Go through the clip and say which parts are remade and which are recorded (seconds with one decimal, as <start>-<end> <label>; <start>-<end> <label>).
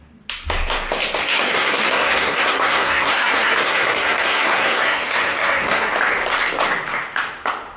0.0-1.2 recorded; 1.2-5.9 remade; 5.9-7.8 recorded